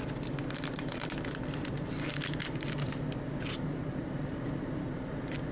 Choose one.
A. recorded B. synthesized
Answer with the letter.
A